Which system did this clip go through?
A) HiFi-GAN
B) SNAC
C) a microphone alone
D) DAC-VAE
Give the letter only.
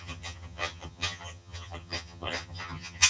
A